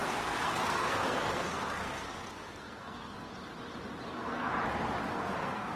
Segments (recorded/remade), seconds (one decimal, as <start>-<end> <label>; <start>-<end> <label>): 0.0-3.3 remade; 3.3-4.1 recorded; 4.1-4.5 remade; 4.5-5.1 recorded; 5.1-5.8 remade